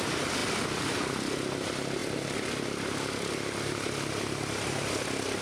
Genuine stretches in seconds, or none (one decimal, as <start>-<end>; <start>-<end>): 0.0-5.4

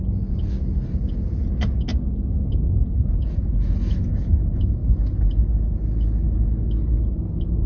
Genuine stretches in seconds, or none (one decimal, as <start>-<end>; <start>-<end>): 0.0-7.7

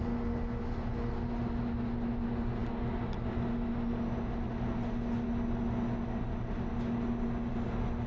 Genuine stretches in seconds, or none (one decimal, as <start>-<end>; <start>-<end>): 0.0-8.1

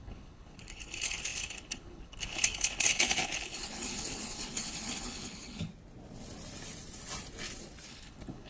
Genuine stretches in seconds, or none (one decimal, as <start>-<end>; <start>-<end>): 5.7-7.9

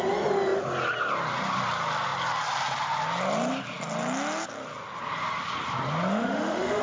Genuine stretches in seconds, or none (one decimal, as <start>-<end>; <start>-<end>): 0.0-6.1

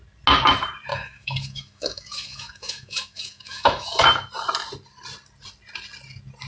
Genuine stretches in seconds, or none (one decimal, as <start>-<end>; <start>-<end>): 0.0-0.9; 4.0-6.5

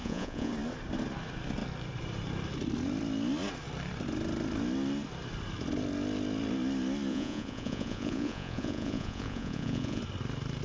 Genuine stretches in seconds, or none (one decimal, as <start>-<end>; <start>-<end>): 0.5-7.1; 10.0-10.6